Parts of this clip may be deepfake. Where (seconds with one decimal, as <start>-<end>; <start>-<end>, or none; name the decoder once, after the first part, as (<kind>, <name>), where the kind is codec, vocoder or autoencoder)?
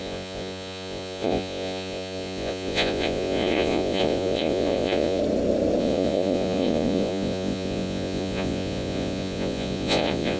0.0-5.2 (vocoder, Vocos); 5.8-10.4